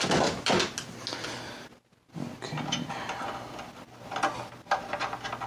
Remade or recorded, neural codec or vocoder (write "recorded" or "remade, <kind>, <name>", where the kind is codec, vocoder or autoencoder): recorded